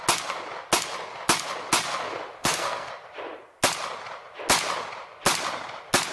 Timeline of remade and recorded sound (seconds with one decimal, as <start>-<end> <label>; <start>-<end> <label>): 0.0-2.4 recorded; 2.4-2.9 remade; 2.9-6.1 recorded